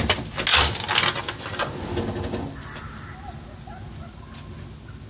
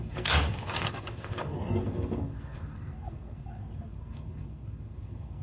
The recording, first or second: first